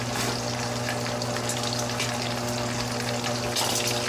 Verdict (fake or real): real